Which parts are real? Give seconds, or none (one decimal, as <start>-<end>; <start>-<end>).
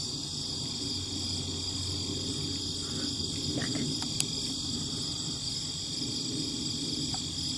0.0-7.6